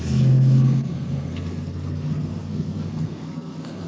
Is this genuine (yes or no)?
no